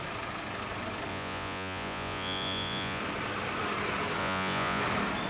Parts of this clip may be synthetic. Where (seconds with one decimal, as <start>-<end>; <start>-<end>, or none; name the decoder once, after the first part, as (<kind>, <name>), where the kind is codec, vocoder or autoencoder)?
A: 1.1-3.0 (vocoder, Vocos); 4.2-4.8